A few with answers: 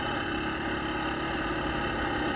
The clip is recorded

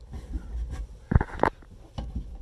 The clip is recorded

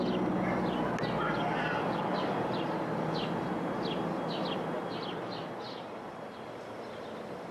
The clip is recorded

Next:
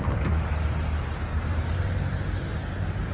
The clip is recorded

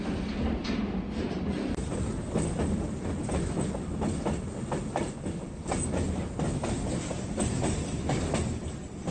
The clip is recorded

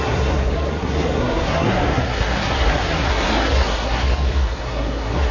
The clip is remade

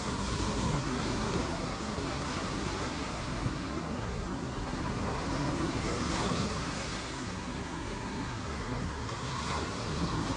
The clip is remade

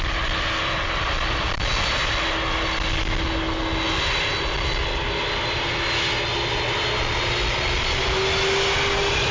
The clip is recorded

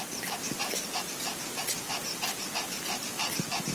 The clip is recorded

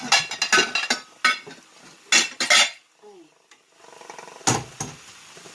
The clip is recorded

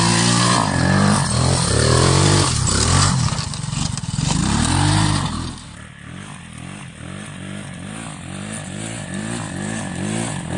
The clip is recorded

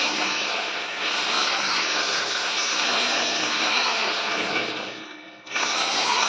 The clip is remade